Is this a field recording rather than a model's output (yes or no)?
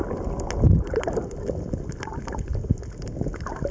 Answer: yes